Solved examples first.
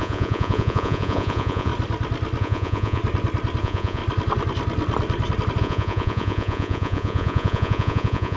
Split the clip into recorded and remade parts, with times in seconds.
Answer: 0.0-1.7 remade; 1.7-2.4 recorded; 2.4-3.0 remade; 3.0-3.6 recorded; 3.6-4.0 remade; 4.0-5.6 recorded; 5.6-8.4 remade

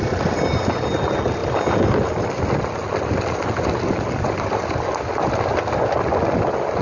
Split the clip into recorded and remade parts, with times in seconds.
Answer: 0.0-6.8 recorded

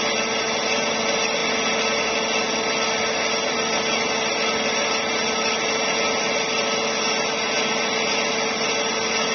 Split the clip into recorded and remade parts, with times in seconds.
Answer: 0.0-9.3 recorded

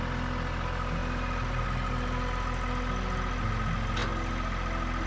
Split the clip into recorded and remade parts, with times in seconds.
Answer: 0.0-5.1 recorded